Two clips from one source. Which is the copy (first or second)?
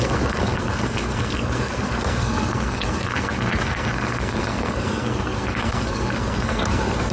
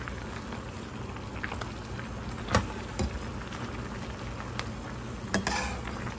first